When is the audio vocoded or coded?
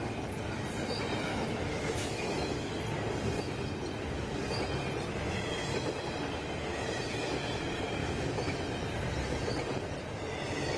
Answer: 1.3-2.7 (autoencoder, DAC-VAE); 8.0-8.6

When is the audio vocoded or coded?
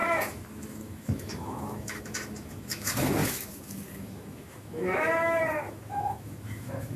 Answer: 0.0-7.0 (autoencoder, DAC-VAE)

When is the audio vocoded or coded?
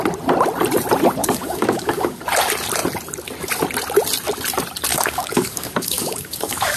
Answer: 1.2-2.2 (codec, DAC); 4.9-6.8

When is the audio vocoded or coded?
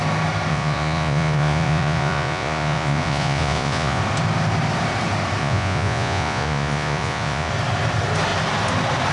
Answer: 0.5-4.0 (vocoder, Vocos); 5.4-7.5